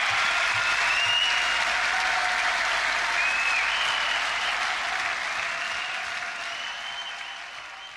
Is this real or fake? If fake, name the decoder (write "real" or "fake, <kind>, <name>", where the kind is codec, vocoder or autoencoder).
real